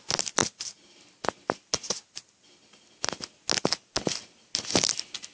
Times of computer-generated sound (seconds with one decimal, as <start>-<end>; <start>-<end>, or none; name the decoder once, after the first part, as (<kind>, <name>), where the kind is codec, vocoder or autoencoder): none